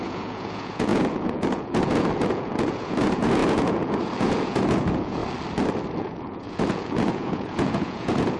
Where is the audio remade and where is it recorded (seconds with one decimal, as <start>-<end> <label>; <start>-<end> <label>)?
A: 0.0-5.2 remade; 5.2-6.0 recorded; 6.0-8.4 remade